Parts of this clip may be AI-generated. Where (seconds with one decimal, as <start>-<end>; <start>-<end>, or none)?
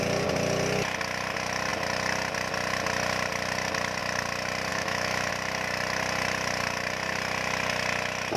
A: 4.7-5.3